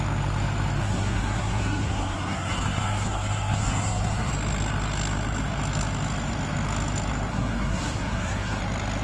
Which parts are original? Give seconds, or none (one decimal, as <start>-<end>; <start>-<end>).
0.0-0.8; 4.3-7.3; 8.6-9.0